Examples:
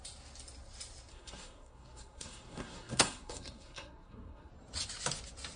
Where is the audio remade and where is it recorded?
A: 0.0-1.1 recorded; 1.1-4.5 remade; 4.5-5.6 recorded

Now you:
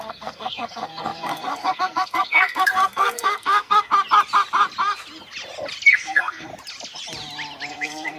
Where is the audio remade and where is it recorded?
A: 0.0-3.9 remade; 3.9-5.9 recorded; 5.9-6.5 remade; 6.5-7.7 recorded; 7.7-8.2 remade

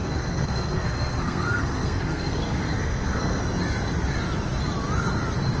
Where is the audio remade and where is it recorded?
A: 0.0-3.4 remade; 3.4-5.6 recorded

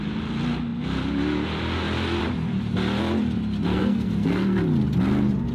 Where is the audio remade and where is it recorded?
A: 0.0-3.7 recorded; 3.7-4.6 remade; 4.6-5.5 recorded

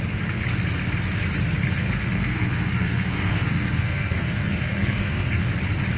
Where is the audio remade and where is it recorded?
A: 0.0-1.8 recorded; 1.8-5.4 remade; 5.4-6.0 recorded

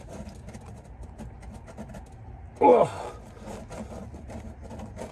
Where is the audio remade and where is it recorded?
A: 0.0-5.1 recorded